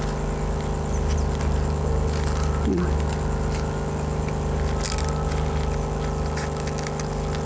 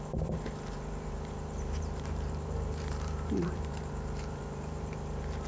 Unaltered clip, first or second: first